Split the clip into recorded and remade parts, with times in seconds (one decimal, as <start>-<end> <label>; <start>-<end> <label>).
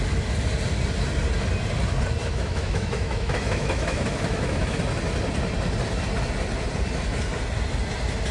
0.0-2.2 recorded; 2.2-4.8 remade; 4.8-8.3 recorded